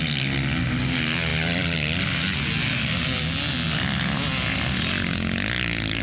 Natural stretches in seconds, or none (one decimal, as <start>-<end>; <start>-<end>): 0.0-6.0